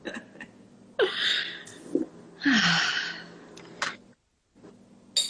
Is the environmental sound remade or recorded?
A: recorded